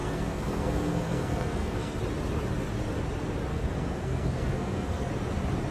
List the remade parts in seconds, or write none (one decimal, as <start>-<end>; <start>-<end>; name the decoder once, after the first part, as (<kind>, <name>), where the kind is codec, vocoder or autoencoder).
0.0-2.0 (codec, SNAC); 3.5-5.1

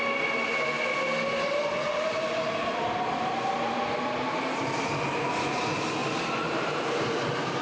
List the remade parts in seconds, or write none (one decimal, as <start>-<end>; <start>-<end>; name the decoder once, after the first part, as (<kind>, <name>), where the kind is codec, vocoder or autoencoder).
none